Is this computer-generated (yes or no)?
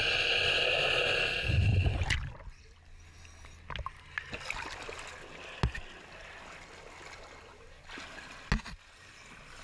no